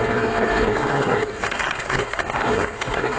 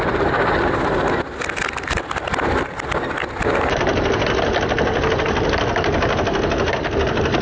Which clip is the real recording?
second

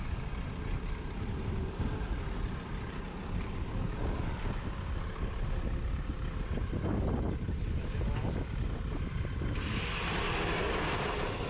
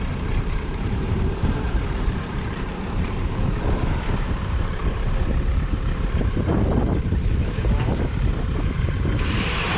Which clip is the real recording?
first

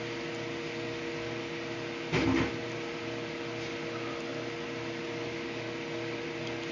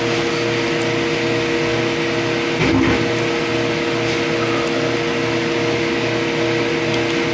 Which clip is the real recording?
second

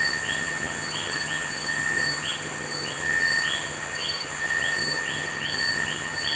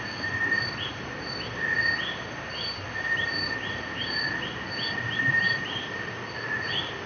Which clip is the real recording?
second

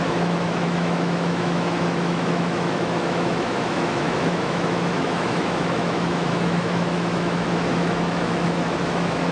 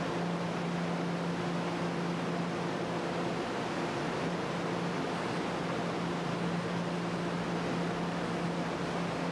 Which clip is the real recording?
second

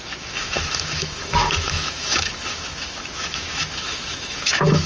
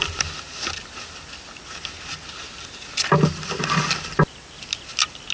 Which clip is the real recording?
second